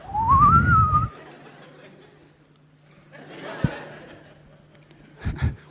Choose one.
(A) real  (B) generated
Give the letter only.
A